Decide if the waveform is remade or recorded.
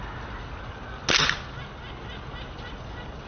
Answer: recorded